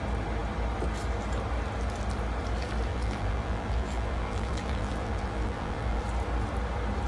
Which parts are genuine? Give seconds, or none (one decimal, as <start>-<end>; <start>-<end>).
0.0-2.9; 6.0-7.1